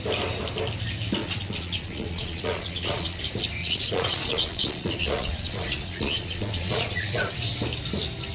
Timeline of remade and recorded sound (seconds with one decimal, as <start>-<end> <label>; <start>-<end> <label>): 0.0-1.2 recorded; 1.2-3.2 remade; 3.2-3.6 recorded; 3.6-7.3 remade; 7.3-8.3 recorded